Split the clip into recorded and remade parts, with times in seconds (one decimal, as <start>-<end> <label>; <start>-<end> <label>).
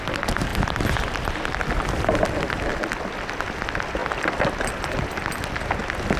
0.0-6.2 recorded